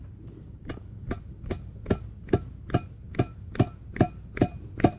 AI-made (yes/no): no